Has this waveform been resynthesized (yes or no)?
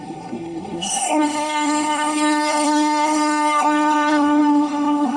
yes